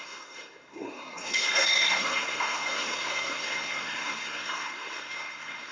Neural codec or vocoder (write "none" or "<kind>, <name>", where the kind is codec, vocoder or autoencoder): codec, SNAC